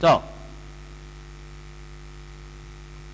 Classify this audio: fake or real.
real